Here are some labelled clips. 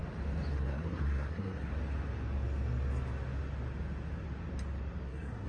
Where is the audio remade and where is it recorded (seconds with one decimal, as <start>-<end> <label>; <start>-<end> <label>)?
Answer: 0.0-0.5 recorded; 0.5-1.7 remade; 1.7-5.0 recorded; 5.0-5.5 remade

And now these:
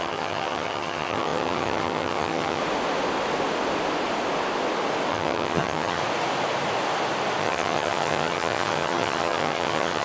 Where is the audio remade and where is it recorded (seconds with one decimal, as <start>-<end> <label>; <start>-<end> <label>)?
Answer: 0.0-2.6 remade; 2.6-5.1 recorded; 5.1-6.0 remade; 6.0-7.4 recorded; 7.4-10.0 remade

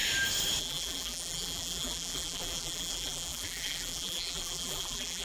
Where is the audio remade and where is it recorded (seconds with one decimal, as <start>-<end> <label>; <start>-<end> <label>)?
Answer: 0.0-0.6 recorded; 0.6-5.2 remade

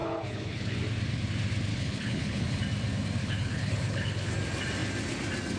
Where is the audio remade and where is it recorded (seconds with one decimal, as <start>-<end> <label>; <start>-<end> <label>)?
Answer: 0.0-0.8 remade; 0.8-1.7 recorded; 1.7-2.6 remade; 2.6-3.2 recorded; 3.2-4.3 remade; 4.3-5.6 recorded

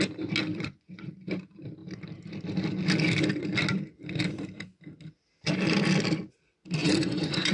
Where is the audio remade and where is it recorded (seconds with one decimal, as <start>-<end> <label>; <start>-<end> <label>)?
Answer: 0.0-0.5 recorded; 0.5-1.1 remade; 1.1-6.8 recorded; 6.8-7.5 remade

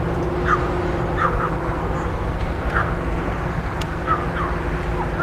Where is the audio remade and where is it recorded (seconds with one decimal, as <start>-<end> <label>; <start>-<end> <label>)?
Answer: 0.0-1.2 recorded; 1.2-4.2 remade; 4.2-5.2 recorded